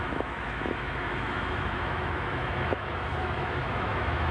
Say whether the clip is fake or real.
fake